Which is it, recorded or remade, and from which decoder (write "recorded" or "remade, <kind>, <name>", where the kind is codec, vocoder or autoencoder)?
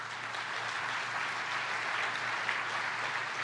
recorded